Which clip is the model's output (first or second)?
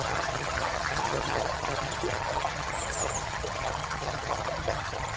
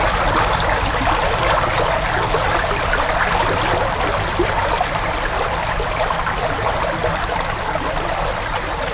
first